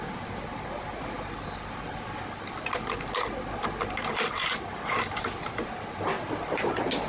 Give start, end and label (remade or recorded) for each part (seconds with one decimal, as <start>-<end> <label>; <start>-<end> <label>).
0.0-4.7 recorded; 4.7-5.7 remade; 5.7-7.1 recorded